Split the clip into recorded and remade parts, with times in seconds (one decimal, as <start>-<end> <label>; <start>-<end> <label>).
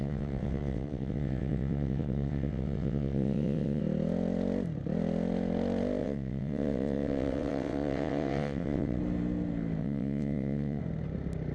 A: 0.0-3.8 remade; 3.8-6.0 recorded; 6.0-9.0 remade; 9.0-9.8 recorded; 9.8-10.8 remade; 10.8-11.5 recorded